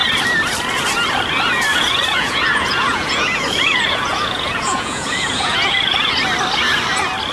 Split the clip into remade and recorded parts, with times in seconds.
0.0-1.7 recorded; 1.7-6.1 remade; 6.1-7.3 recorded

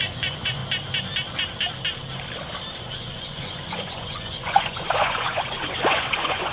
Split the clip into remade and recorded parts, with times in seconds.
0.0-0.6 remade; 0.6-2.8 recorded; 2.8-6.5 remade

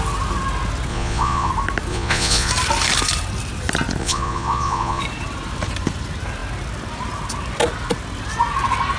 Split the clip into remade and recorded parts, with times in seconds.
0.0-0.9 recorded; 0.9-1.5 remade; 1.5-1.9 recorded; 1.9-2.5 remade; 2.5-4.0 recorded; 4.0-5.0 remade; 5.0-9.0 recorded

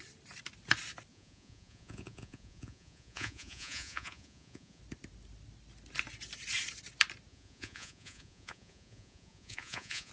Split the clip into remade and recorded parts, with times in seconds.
0.0-1.1 recorded; 1.1-4.8 remade; 4.8-7.3 recorded; 7.3-10.1 remade